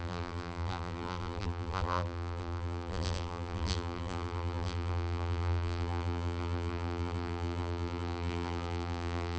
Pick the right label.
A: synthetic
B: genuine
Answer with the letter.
A